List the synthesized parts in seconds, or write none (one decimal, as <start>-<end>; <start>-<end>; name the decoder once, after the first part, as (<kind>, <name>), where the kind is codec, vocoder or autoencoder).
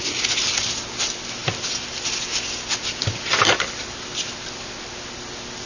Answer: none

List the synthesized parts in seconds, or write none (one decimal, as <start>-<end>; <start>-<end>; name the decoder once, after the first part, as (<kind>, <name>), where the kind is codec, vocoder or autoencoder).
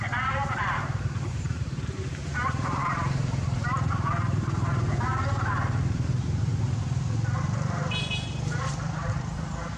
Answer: 0.0-5.1 (vocoder, BigVGAN v2); 5.9-6.5; 7.4-9.8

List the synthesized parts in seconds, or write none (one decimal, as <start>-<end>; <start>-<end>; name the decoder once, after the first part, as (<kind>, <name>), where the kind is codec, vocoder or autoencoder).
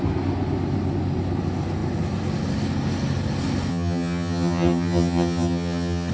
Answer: 3.7-6.1 (vocoder, HiFi-GAN)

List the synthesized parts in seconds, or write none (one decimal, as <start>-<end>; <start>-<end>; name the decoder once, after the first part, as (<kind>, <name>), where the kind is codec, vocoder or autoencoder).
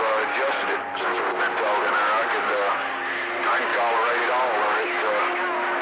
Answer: none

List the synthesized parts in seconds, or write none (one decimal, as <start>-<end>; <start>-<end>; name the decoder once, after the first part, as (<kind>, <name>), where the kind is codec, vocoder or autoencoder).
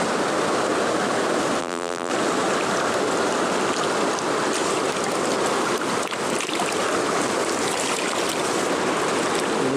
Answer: 1.6-2.1 (vocoder, BigVGAN v2)